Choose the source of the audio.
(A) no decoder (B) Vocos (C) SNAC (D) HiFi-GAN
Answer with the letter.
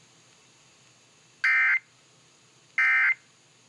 A